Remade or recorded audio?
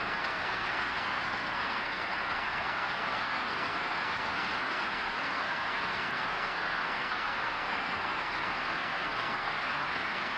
remade